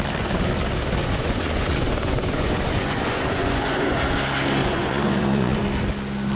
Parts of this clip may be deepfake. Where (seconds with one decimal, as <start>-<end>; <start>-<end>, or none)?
1.0-4.0; 4.6-5.6

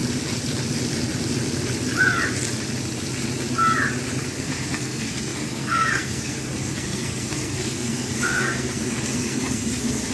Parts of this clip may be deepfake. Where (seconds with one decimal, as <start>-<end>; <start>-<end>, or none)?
4.2-10.1

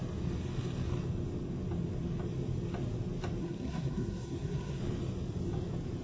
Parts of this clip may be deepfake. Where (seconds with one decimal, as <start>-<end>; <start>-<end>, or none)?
3.4-4.8

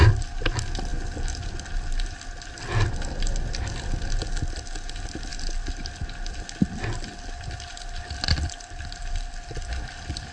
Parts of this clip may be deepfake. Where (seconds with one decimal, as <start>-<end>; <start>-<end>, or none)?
none

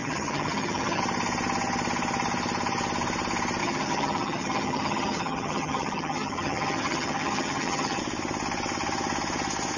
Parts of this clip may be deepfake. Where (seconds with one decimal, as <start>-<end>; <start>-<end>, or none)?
0.0-1.0; 3.6-8.0

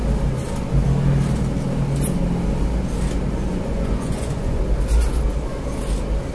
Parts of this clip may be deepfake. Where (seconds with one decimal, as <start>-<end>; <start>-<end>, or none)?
3.5-4.6